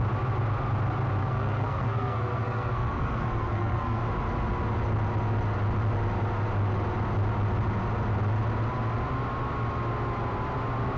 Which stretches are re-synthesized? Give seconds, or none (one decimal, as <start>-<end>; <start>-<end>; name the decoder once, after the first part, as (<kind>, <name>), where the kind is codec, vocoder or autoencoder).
1.2-4.0 (codec, SNAC)